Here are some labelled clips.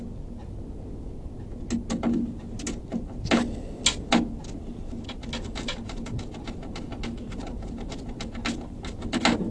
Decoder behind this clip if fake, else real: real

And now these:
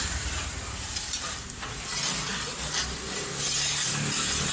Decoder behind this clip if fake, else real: fake, vocoder, BigVGAN v2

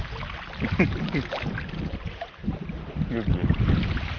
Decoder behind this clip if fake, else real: real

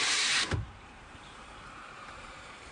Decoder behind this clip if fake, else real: fake, vocoder, BigVGAN v2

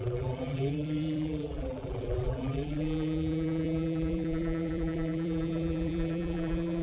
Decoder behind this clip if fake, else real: fake, vocoder, BigVGAN v2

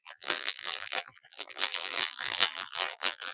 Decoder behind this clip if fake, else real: fake, vocoder, BigVGAN v2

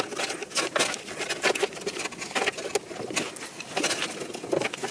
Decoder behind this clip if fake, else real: real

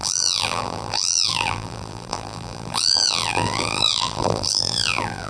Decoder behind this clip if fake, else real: fake, vocoder, BigVGAN v2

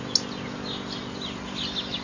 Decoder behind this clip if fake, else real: real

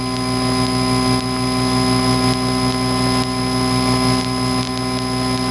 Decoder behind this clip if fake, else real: real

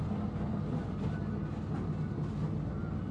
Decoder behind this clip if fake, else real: real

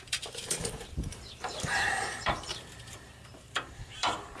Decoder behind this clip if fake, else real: fake, vocoder, BigVGAN v2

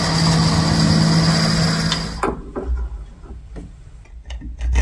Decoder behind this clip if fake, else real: real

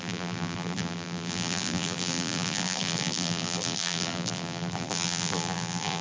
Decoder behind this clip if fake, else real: fake, vocoder, BigVGAN v2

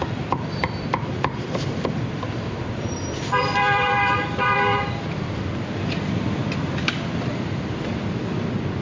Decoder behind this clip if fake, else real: fake, vocoder, BigVGAN v2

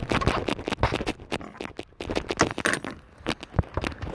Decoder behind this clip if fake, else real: real